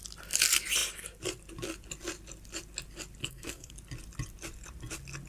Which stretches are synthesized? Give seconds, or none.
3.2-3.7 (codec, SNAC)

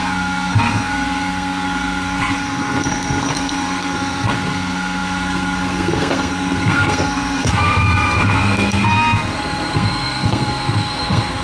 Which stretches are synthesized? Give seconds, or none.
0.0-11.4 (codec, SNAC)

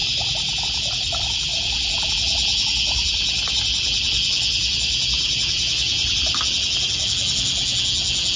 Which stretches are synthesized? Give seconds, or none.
none